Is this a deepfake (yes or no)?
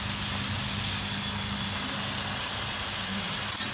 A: no